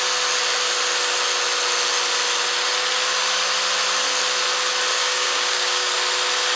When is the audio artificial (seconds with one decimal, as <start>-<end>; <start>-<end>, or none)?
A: 4.9-5.9